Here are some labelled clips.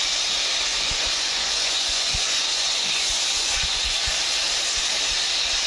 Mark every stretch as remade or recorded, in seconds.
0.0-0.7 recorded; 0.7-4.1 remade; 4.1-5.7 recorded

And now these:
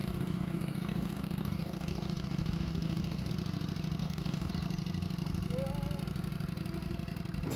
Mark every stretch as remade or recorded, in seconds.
0.0-3.3 remade; 3.3-4.0 recorded; 4.0-4.5 remade; 4.5-7.6 recorded

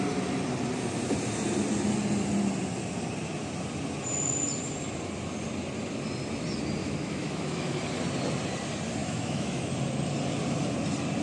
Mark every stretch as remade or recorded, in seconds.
0.0-6.8 recorded; 6.8-7.8 remade; 7.8-9.0 recorded; 9.0-9.7 remade; 9.7-11.2 recorded

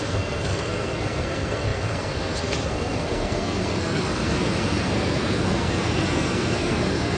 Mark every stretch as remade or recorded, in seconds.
0.0-7.2 remade